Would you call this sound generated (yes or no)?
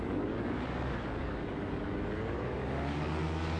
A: yes